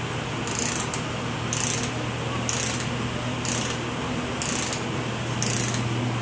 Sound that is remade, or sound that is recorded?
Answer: recorded